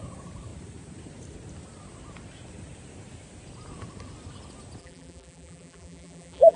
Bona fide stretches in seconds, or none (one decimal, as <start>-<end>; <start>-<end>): 0.0-4.8